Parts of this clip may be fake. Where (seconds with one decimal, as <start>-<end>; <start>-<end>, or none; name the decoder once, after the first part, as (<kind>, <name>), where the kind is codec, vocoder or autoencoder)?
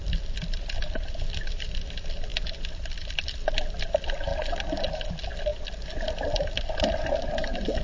none